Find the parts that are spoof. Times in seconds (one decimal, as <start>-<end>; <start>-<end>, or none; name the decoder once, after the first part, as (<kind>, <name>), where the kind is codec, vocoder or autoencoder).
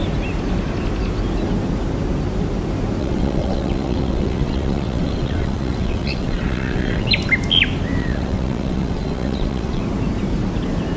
3.0-7.1 (vocoder, WaveNeXt); 8.0-9.8